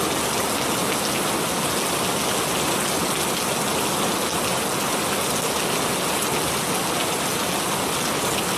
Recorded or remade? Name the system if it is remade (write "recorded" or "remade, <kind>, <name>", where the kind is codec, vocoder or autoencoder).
recorded